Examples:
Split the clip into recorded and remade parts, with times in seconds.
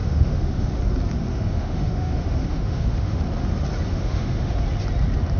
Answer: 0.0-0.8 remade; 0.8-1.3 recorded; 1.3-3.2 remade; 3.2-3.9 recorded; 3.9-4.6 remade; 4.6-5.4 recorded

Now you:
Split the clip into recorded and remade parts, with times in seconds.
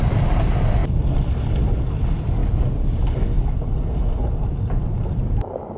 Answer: 0.0-5.8 recorded